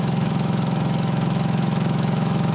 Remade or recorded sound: remade